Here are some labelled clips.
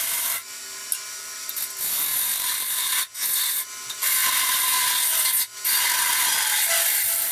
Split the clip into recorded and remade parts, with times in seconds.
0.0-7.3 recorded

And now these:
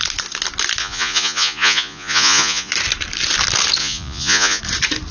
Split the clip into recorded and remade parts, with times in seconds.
0.0-0.8 recorded; 0.8-2.7 remade; 2.7-3.8 recorded; 3.8-4.6 remade; 4.6-5.1 recorded